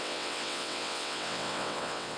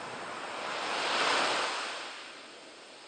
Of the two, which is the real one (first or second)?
second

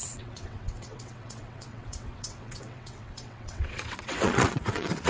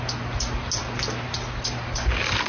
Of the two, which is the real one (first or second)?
second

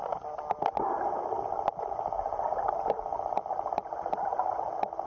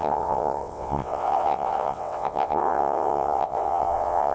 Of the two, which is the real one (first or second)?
first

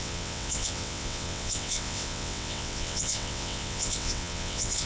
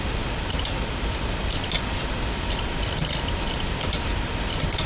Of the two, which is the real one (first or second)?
second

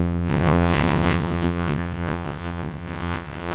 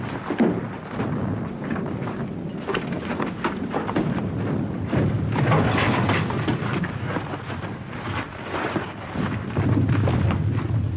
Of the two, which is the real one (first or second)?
second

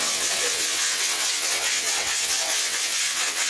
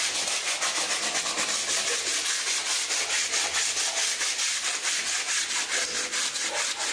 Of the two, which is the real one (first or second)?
second